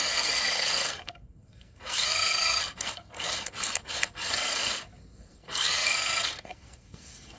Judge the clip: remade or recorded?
remade